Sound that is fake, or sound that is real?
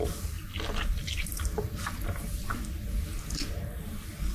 real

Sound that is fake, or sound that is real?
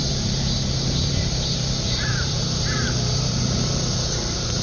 fake